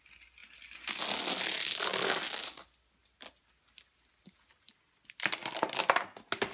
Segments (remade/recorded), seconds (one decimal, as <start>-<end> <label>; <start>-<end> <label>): 0.0-6.5 recorded